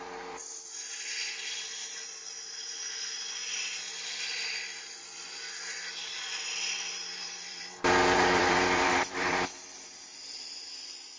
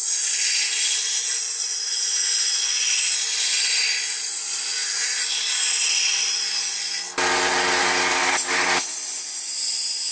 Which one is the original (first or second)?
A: second